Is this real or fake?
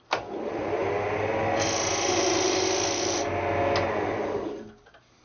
real